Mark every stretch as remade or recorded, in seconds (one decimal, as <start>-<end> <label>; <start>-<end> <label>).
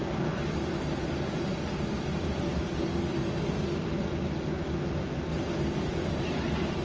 0.0-5.3 recorded; 5.3-6.2 remade; 6.2-6.8 recorded